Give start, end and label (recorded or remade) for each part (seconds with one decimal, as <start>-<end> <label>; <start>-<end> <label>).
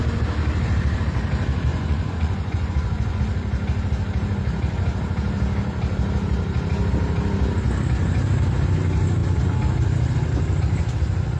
0.0-1.7 recorded; 1.7-3.2 remade; 3.2-11.4 recorded